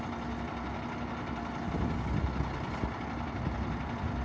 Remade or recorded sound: recorded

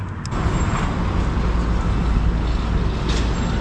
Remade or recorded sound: recorded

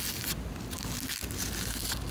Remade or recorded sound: recorded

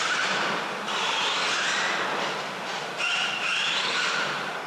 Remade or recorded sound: recorded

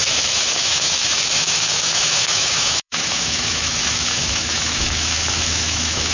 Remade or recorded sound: remade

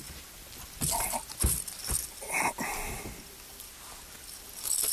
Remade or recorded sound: recorded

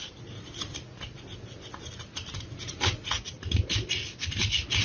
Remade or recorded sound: recorded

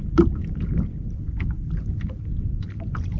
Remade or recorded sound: recorded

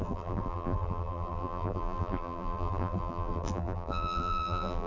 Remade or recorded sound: remade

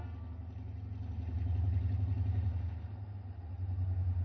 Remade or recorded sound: recorded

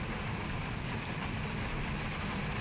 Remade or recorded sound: recorded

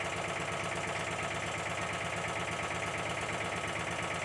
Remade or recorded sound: recorded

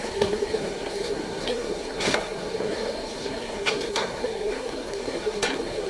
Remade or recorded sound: remade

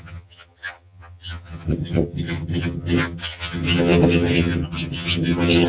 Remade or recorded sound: remade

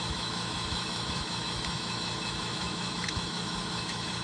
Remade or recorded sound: remade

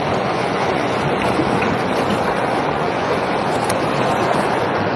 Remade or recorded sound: remade